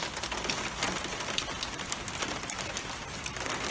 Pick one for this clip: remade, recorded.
recorded